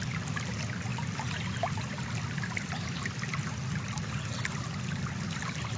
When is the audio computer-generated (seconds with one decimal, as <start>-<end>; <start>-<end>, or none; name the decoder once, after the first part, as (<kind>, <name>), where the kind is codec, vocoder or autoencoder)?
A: none